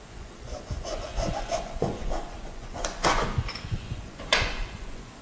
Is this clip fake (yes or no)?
yes